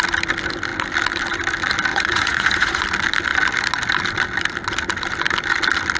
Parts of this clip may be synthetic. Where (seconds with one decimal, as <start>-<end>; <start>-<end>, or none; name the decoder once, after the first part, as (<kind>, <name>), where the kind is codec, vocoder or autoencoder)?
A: 1.9-2.8 (vocoder, Vocos)